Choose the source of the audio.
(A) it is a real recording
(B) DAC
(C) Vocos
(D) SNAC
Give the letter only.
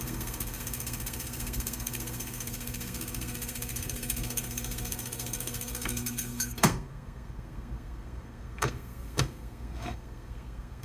D